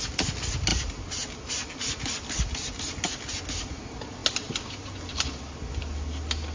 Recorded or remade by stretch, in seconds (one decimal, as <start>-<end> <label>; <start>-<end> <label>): 0.0-6.5 recorded